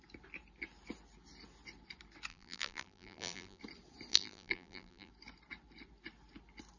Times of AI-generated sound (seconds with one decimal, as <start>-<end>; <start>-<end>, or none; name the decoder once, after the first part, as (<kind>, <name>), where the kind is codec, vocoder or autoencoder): 2.3-3.6 (vocoder, BigVGAN v2); 4.1-5.1